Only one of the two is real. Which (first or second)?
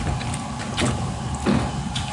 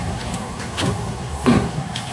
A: first